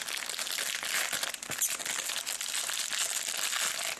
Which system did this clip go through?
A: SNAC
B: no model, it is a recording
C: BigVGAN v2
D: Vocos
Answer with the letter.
B